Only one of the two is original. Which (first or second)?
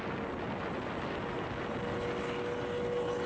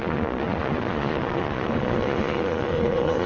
first